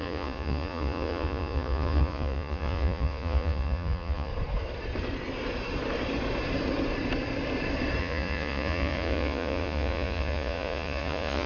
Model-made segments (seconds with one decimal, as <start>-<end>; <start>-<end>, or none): 0.0-4.3; 8.0-11.5